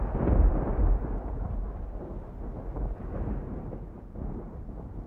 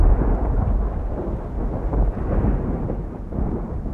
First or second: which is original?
first